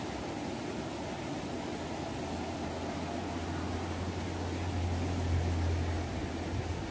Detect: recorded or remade recorded